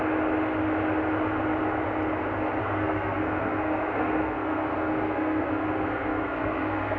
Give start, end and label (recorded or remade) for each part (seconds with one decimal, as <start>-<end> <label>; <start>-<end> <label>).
0.0-2.6 recorded; 2.6-7.0 remade